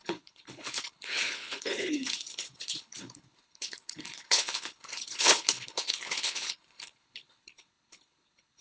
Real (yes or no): no